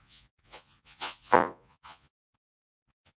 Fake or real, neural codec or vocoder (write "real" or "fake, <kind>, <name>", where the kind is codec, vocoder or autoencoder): fake, vocoder, Vocos